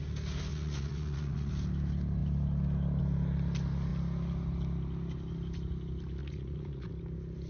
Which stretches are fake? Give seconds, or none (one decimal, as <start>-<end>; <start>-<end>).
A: 0.5-1.5; 6.2-6.9